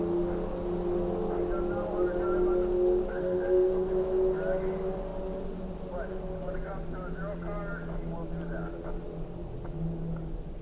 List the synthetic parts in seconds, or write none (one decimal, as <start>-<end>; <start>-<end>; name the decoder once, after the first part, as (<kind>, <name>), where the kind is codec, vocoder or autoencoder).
3.1-3.9 (codec, SNAC)